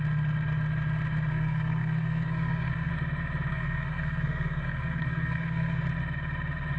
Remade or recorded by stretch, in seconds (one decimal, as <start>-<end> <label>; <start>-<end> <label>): 0.0-1.3 recorded; 1.3-2.9 remade; 2.9-3.5 recorded; 3.5-5.8 remade; 5.8-6.8 recorded